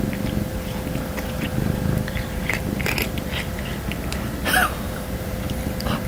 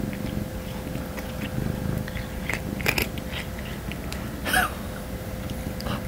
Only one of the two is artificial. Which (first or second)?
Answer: first